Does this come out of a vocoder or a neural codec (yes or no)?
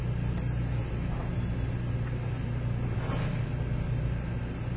no